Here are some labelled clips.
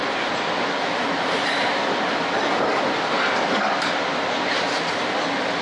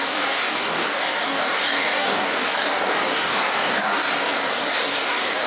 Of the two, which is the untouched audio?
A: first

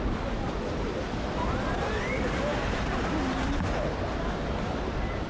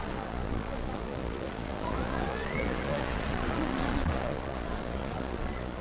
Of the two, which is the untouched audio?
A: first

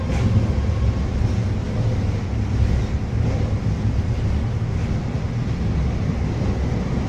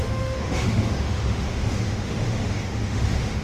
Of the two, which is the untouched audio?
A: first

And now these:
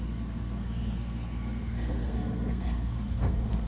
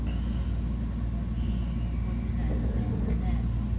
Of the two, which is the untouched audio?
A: second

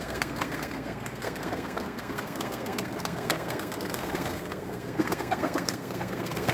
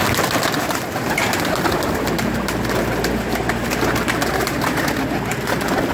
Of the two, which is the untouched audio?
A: second